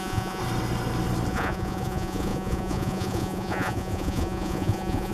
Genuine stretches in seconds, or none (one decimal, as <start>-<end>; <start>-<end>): 0.4-1.3